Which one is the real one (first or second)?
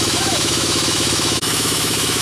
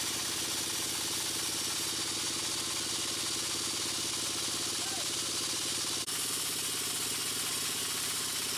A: second